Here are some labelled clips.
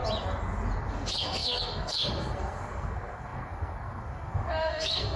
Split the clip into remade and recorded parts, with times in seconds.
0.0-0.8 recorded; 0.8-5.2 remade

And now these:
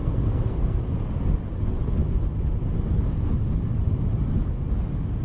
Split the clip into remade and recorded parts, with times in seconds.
0.0-0.8 remade; 0.8-5.2 recorded

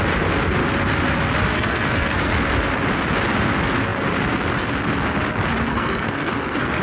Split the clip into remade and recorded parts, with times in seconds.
0.0-1.5 recorded; 1.5-2.3 remade; 2.3-5.7 recorded; 5.7-6.8 remade

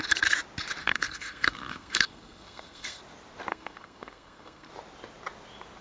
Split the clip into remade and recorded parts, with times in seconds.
0.0-0.8 recorded; 0.8-3.0 remade; 3.0-3.5 recorded; 3.5-4.7 remade; 4.7-5.8 recorded

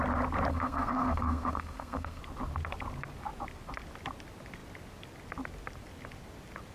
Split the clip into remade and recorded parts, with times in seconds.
0.0-0.5 recorded; 0.5-2.2 remade; 2.2-6.7 recorded